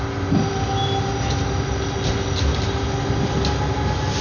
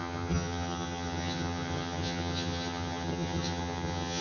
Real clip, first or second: first